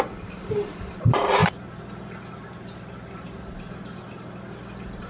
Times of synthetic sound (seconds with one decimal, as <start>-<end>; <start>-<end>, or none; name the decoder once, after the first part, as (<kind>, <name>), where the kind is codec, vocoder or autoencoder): 0.0-5.1 (vocoder, BigVGAN v2)